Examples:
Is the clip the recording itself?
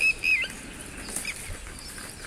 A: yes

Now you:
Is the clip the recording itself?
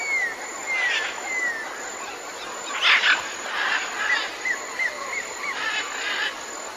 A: yes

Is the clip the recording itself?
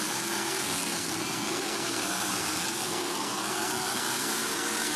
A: no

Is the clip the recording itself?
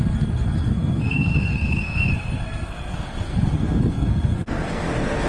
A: no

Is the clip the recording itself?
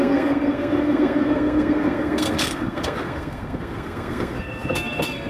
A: no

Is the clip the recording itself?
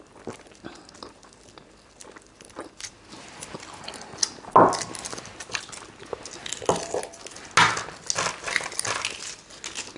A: yes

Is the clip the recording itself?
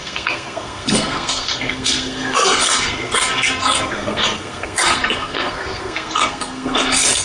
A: no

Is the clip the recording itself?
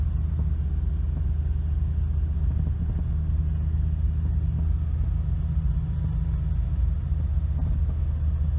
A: yes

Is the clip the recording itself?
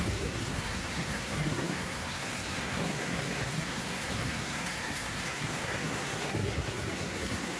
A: no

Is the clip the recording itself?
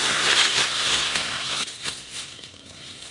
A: no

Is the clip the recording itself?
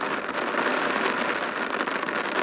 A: yes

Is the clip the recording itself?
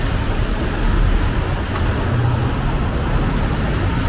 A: yes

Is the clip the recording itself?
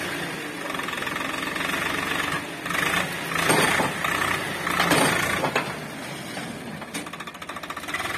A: yes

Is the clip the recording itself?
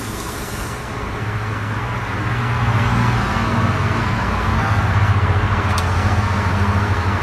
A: no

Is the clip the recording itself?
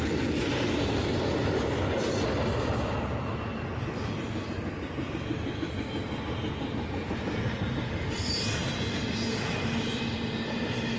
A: yes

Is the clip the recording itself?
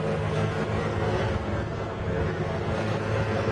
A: no